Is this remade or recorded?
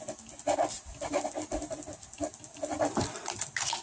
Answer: recorded